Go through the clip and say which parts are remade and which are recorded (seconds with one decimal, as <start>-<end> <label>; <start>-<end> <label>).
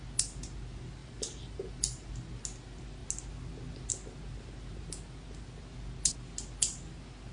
0.0-1.0 recorded; 1.0-2.1 remade; 2.1-7.3 recorded